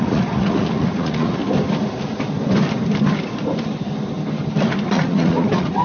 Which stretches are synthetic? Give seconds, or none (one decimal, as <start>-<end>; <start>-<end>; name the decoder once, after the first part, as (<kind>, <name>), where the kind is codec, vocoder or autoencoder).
0.0-1.4 (vocoder, Vocos); 4.9-5.8